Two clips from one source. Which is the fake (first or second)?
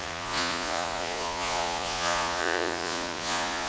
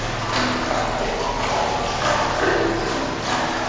first